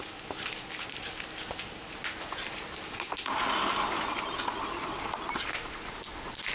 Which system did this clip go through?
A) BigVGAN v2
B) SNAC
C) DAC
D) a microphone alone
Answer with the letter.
D